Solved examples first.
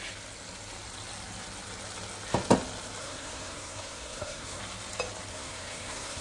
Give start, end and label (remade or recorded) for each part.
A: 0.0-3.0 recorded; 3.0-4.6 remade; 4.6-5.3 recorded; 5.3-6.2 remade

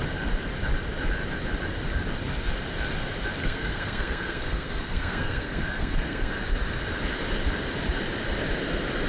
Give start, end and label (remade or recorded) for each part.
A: 0.0-3.4 recorded; 3.4-6.3 remade; 6.3-9.1 recorded

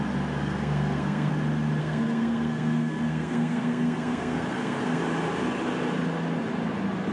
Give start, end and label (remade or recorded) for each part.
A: 0.0-0.4 recorded; 0.4-1.3 remade; 1.3-1.8 recorded; 1.8-5.0 remade; 5.0-7.1 recorded

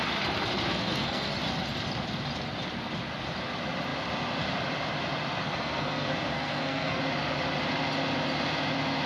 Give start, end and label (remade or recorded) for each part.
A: 0.0-0.7 recorded; 0.7-1.3 remade; 1.3-5.4 recorded; 5.4-7.0 remade; 7.0-9.1 recorded

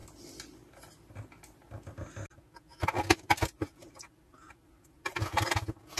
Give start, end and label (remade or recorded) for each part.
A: 0.0-6.0 recorded

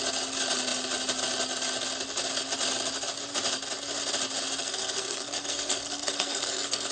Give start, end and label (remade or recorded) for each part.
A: 0.0-4.6 recorded; 4.6-6.9 remade

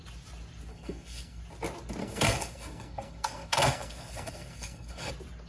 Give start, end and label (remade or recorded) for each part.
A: 0.0-0.7 recorded; 0.7-1.4 remade; 1.4-2.0 recorded; 2.0-5.1 remade; 5.1-5.5 recorded